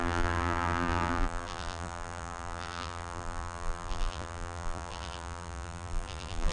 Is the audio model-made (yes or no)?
yes